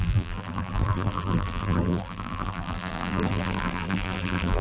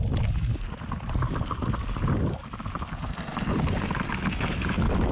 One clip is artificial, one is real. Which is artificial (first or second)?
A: first